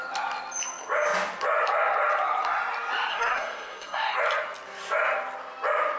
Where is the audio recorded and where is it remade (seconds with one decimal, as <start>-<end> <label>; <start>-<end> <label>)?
0.0-3.1 recorded; 3.1-4.2 remade; 4.2-6.0 recorded